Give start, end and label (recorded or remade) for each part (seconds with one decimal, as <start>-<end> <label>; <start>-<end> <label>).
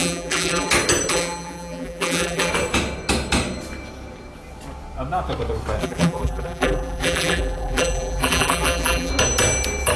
0.0-0.7 remade; 0.7-1.1 recorded; 1.1-2.5 remade; 2.5-5.8 recorded; 5.8-9.1 remade; 9.1-10.0 recorded